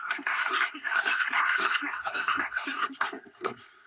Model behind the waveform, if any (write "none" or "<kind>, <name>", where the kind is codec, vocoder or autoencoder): codec, SNAC